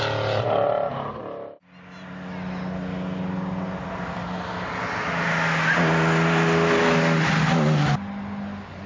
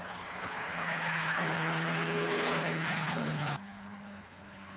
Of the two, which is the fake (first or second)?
second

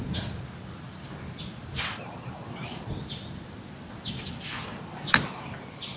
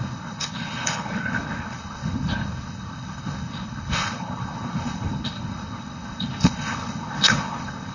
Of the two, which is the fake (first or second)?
second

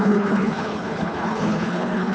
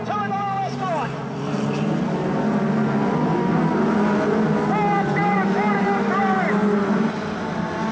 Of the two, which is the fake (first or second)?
first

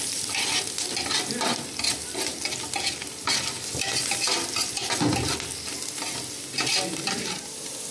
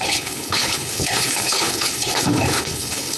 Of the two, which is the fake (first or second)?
second